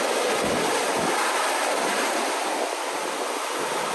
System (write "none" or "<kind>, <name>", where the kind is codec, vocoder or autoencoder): none